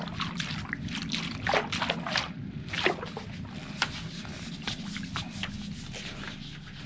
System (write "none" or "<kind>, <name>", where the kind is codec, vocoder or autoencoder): none